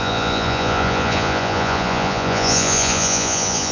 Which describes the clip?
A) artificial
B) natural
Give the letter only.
A